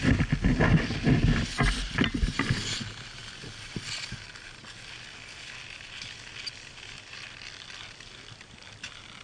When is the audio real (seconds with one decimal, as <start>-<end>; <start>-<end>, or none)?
0.0-9.2